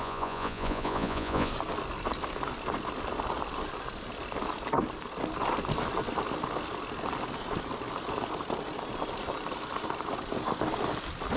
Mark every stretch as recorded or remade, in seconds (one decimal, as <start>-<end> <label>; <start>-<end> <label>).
0.0-1.5 remade; 1.5-11.4 recorded